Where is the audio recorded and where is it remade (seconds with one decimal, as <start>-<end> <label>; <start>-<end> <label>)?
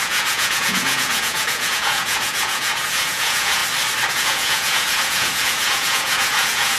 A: 0.0-3.6 remade; 3.6-4.1 recorded; 4.1-6.8 remade